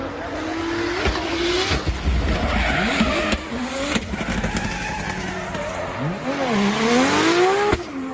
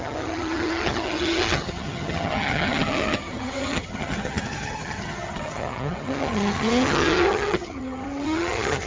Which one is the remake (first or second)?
second